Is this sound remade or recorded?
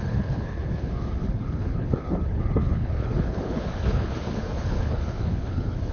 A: remade